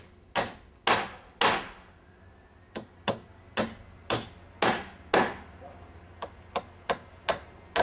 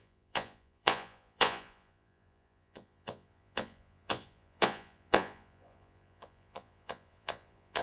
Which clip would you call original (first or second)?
first